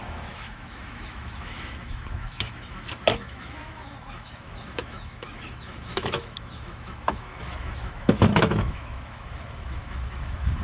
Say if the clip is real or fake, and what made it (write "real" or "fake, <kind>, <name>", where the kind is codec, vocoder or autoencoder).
fake, autoencoder, DAC-VAE